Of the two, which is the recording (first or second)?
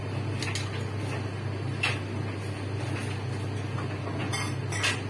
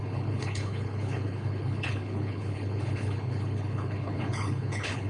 first